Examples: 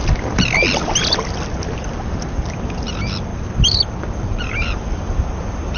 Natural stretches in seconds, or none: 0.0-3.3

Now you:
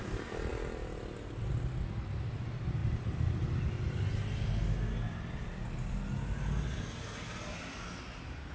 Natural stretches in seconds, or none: 0.0-2.8; 3.7-8.5